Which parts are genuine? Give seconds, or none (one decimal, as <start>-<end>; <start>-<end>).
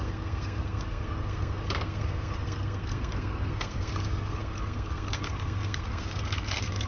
none